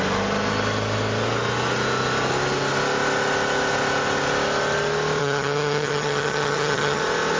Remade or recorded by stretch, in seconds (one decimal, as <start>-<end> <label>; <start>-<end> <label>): 0.0-5.2 recorded; 5.2-7.0 remade; 7.0-7.4 recorded